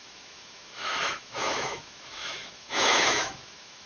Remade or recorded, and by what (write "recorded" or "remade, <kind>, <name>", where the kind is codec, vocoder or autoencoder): remade, autoencoder, DAC-VAE